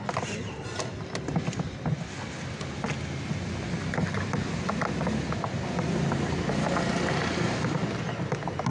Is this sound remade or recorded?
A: recorded